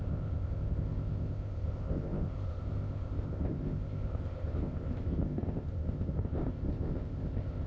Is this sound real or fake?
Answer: fake